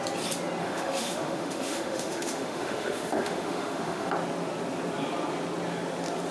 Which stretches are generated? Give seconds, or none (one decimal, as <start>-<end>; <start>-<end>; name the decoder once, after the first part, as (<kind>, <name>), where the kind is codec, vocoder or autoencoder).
0.6-4.1 (autoencoder, DAC-VAE)